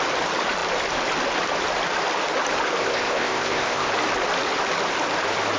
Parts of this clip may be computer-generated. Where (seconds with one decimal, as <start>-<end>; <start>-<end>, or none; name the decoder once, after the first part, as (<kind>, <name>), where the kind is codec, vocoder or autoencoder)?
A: 2.8-3.9 (codec, ZipCodec)